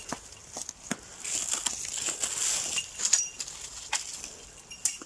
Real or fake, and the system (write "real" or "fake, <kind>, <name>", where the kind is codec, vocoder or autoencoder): real